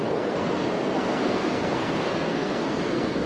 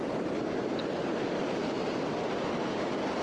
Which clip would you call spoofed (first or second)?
first